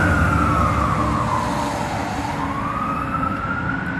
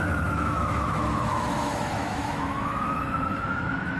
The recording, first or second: first